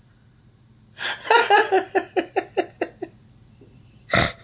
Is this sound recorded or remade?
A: recorded